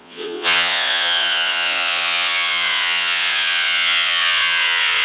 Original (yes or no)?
no